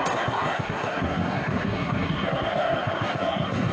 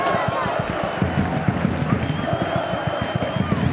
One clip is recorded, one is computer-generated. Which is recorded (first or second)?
second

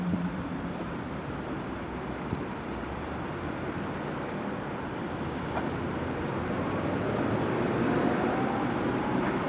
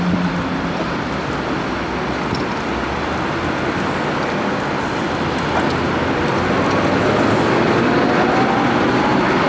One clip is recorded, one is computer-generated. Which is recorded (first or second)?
second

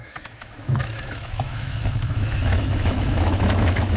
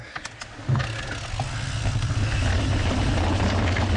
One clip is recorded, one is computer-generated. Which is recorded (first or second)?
second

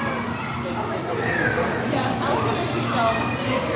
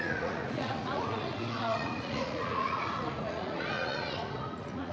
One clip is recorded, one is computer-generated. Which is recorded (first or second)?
first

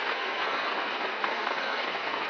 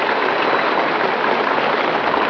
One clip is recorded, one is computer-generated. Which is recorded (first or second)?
second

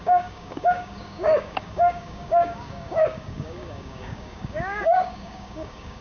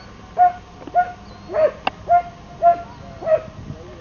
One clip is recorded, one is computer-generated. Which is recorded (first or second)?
second